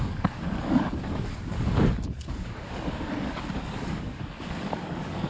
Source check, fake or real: fake